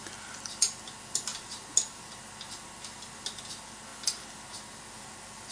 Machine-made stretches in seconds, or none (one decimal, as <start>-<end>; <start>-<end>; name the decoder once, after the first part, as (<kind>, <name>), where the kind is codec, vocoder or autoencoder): none